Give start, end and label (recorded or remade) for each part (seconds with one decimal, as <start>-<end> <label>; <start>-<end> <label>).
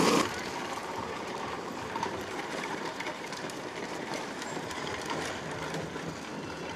0.0-0.8 recorded; 0.8-4.9 remade; 4.9-6.8 recorded